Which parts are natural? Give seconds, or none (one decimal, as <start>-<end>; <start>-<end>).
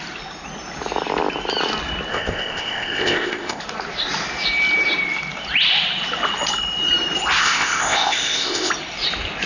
0.0-2.1; 3.6-7.4; 8.7-9.5